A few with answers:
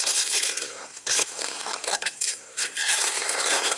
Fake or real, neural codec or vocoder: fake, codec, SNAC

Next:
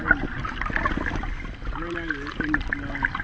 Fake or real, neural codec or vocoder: real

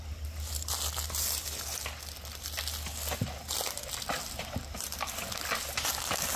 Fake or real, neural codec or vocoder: real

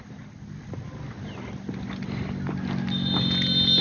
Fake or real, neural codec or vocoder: real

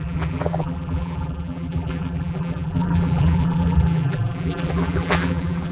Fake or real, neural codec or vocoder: fake, vocoder, BigVGAN v2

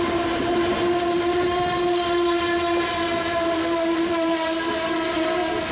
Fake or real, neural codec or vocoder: real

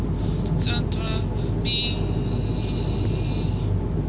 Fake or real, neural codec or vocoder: real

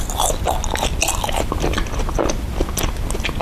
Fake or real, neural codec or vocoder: real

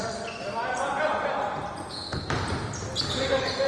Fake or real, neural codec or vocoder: real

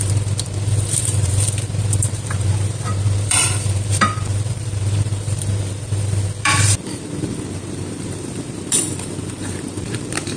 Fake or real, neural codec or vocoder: fake, vocoder, BigVGAN v2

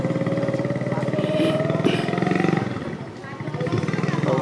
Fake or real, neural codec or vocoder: real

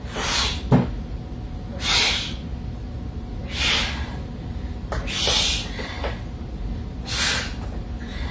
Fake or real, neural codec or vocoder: real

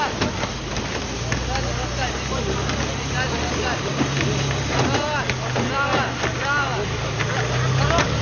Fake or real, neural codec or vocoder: real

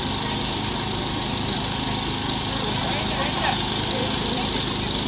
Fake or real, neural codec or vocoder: real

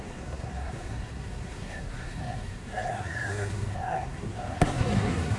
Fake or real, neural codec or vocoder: fake, codec, SNAC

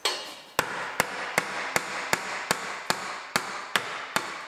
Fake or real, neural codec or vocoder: real